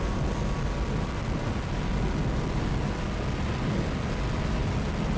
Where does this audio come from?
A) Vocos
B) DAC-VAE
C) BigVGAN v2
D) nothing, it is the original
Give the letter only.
D